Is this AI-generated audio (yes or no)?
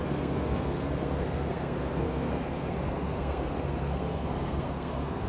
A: yes